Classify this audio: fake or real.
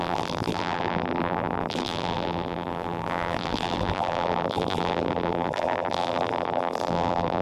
fake